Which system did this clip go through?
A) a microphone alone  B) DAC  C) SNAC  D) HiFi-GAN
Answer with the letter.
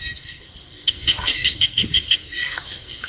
C